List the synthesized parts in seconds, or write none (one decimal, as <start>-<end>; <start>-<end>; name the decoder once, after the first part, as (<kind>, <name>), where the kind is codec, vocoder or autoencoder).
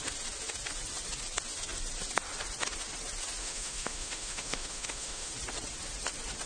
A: 3.4-5.3 (autoencoder, DAC-VAE)